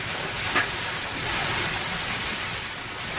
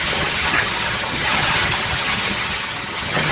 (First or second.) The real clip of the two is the first